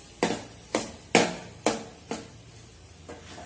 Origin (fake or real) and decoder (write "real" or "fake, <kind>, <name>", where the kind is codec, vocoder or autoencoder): real